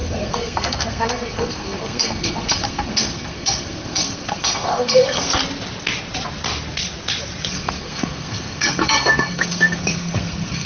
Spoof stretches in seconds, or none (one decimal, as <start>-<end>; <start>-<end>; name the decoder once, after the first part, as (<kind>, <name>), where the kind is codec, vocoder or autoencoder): 0.0-5.3 (codec, SNAC); 7.5-10.7